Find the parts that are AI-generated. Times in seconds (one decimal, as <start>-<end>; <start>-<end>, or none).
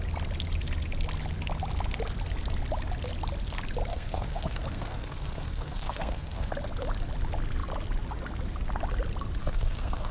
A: 3.9-6.5; 9.4-10.1